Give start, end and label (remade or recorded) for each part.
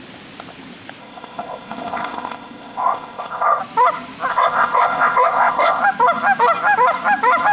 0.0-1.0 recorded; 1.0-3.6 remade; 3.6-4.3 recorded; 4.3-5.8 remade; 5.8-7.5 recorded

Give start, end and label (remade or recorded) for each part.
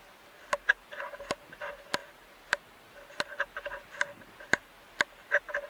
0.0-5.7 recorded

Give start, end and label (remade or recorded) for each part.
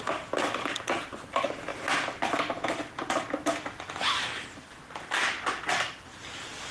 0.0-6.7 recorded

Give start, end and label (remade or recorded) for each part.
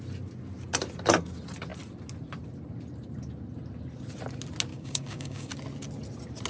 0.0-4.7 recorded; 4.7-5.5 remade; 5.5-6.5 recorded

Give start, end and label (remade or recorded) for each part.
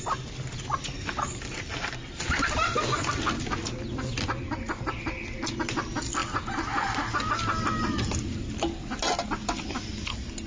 0.0-10.5 recorded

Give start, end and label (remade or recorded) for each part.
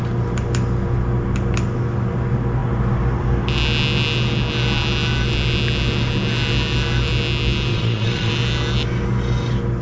0.0-7.7 recorded; 7.7-8.3 remade; 8.3-9.8 recorded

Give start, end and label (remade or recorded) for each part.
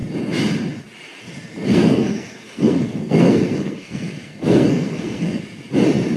0.0-1.7 recorded; 1.7-5.4 remade; 5.4-6.2 recorded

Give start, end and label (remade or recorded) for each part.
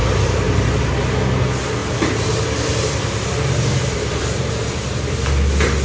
0.0-0.9 remade; 0.9-1.8 recorded; 1.8-4.5 remade; 4.5-5.8 recorded